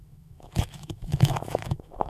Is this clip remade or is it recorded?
remade